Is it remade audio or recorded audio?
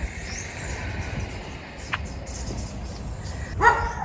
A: recorded